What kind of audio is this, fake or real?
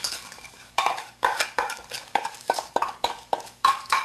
fake